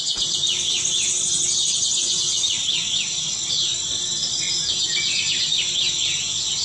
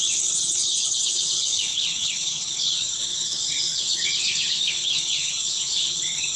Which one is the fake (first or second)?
second